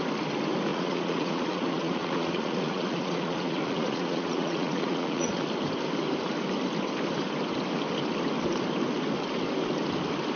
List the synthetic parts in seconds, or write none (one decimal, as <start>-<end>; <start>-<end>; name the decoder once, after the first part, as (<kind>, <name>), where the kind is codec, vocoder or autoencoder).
0.7-5.4 (vocoder, Vocos)